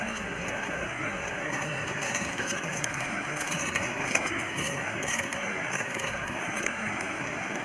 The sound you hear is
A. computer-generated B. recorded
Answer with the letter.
A